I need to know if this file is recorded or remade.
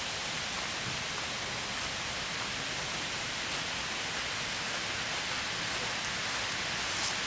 recorded